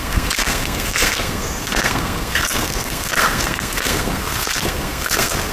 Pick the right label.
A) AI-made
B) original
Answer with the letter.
A